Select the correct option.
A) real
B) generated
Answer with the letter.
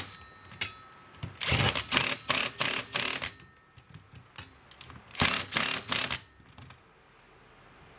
A